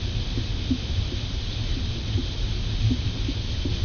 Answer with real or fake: real